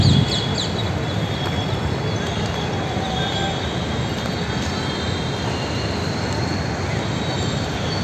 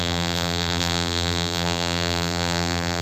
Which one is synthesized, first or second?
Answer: second